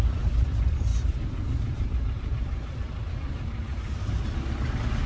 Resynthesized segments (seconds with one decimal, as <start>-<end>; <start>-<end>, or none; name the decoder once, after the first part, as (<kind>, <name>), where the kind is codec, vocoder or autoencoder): 0.0-0.9 (vocoder, BigVGAN v2); 4.0-5.1